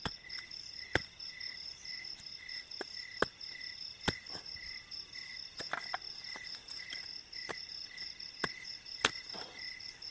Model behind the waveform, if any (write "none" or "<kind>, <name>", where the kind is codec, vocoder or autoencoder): none